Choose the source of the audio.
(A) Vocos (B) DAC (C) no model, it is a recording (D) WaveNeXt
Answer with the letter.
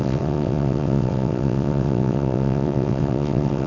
D